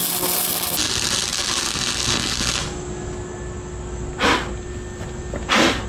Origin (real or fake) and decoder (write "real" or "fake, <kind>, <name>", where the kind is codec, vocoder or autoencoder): real